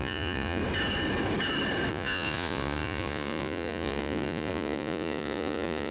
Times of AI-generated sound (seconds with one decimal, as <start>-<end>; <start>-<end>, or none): 0.0-0.6; 1.9-5.9